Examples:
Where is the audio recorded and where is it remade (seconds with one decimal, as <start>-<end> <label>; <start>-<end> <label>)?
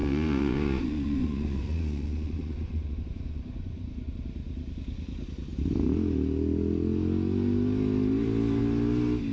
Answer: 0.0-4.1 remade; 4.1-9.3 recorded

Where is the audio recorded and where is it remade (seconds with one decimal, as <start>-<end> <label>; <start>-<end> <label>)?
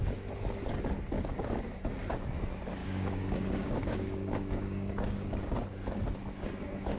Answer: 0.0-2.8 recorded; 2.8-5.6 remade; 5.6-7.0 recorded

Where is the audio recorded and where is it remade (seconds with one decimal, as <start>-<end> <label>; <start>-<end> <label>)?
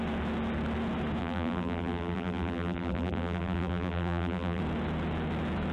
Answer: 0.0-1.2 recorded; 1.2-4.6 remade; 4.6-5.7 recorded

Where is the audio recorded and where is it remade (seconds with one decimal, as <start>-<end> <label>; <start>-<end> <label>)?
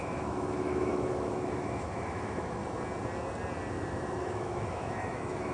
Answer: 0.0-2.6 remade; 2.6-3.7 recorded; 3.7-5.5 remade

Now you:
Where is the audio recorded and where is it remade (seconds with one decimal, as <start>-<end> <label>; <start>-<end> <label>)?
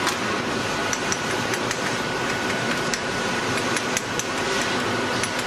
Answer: 0.0-0.8 recorded; 0.8-3.7 remade; 3.7-5.5 recorded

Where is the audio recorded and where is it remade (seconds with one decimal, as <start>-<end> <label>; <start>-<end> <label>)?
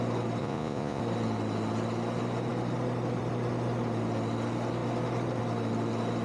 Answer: 0.0-0.4 recorded; 0.4-1.0 remade; 1.0-6.2 recorded